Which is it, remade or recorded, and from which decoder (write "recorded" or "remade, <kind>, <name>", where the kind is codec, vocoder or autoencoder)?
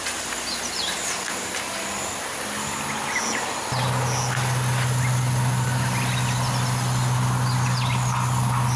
recorded